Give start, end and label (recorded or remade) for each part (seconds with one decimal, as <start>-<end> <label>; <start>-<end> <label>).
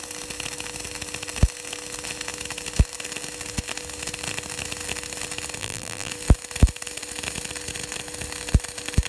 0.0-5.6 recorded; 5.6-6.1 remade; 6.1-9.1 recorded